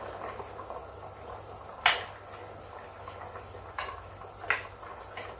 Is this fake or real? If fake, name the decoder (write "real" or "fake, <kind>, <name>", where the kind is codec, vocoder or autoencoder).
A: real